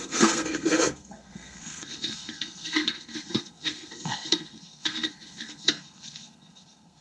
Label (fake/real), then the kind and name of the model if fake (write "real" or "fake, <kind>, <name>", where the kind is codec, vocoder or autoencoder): fake, codec, SNAC